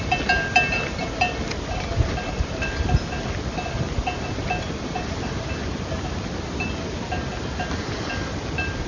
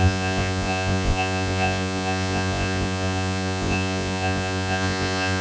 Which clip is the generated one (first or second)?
second